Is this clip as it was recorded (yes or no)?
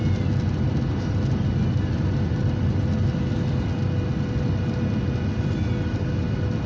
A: yes